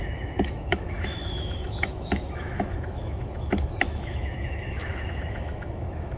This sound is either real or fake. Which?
fake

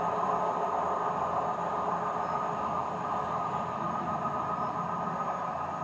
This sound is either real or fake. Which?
real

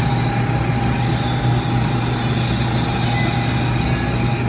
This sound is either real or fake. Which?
real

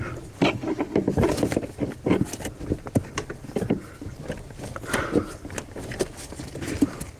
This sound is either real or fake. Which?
real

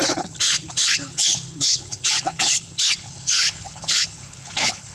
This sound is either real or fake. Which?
fake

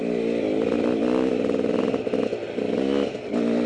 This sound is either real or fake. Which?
real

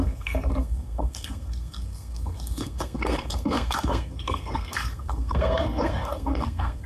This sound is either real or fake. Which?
fake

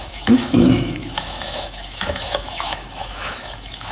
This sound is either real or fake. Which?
fake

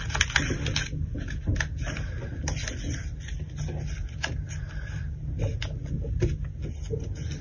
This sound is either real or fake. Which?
real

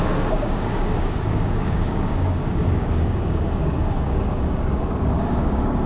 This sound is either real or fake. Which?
fake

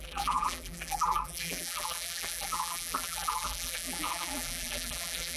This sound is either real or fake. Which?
fake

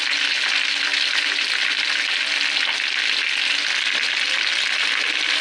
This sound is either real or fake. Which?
real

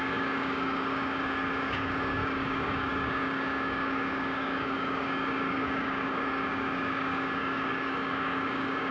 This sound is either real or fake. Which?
fake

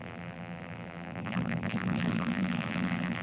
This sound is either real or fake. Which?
fake